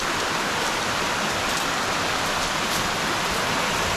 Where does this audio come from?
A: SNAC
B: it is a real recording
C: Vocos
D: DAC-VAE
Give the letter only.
B